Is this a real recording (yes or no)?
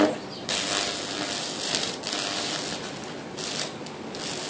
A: yes